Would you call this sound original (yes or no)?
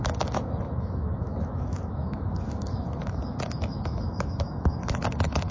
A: no